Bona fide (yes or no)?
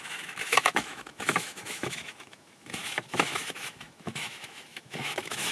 no